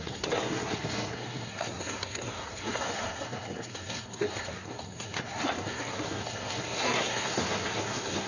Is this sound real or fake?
fake